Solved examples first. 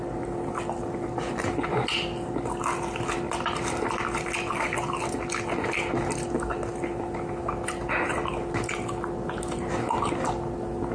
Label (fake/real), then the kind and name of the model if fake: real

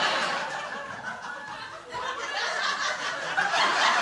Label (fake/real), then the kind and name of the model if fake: real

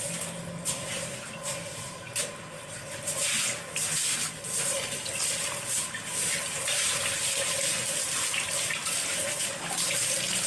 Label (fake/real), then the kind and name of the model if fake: real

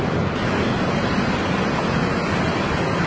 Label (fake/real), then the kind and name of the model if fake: fake, vocoder, BigVGAN v2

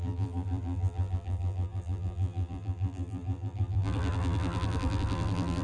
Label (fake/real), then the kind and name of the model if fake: fake, vocoder, BigVGAN v2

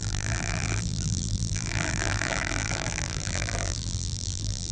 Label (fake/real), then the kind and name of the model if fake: fake, vocoder, BigVGAN v2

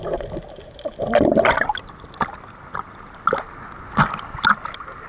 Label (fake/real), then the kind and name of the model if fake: real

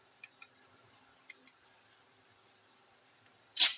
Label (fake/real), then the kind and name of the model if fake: fake, vocoder, BigVGAN v2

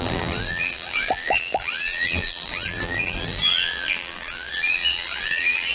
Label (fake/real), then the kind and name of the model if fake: fake, vocoder, BigVGAN v2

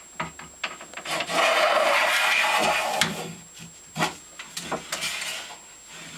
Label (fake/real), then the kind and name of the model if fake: real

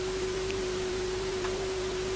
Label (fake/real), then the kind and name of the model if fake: fake, vocoder, BigVGAN v2